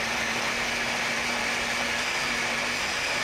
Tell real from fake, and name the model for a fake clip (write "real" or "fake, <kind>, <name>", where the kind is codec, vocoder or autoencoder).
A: real